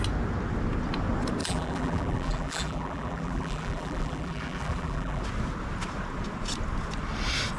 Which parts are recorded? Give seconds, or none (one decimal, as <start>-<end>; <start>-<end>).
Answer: 0.0-1.4; 5.2-7.6